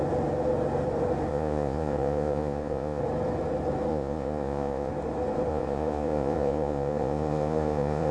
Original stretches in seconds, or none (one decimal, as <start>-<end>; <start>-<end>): 0.0-1.3; 3.0-3.9; 4.9-5.5

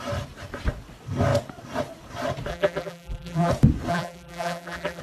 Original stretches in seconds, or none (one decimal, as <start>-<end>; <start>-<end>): 0.0-2.5; 3.5-3.9

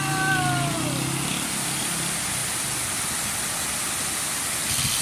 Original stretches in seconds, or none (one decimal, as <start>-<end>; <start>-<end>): 0.0-5.0

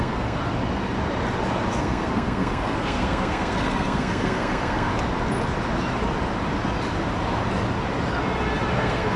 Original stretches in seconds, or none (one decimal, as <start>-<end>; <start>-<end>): 0.4-1.8; 4.9-8.7

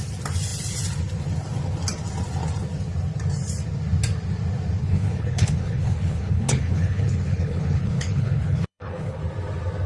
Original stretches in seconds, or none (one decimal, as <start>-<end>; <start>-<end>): 0.0-4.8; 9.2-9.9

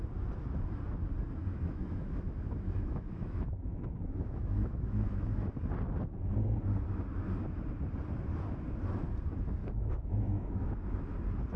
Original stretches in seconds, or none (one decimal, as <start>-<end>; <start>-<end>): 0.0-1.4; 5.5-9.6; 11.0-11.6

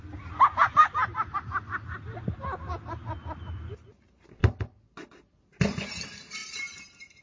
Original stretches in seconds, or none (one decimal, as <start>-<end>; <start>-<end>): 0.0-7.2

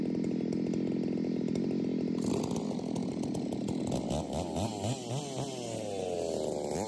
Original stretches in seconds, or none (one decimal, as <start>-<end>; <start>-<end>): 0.0-6.9